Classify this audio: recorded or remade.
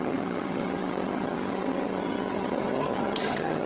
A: remade